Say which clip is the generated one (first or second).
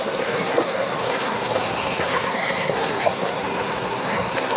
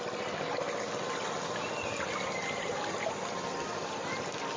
first